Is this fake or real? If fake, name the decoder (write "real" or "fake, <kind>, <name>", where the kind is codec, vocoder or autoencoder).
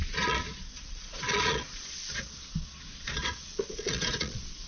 fake, vocoder, Vocos